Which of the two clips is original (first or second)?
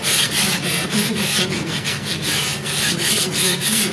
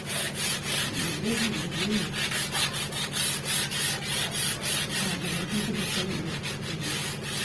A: second